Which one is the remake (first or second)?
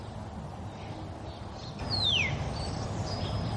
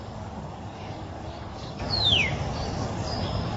second